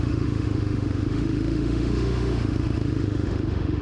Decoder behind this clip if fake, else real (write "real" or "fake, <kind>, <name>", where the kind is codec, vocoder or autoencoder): fake, autoencoder, DAC-VAE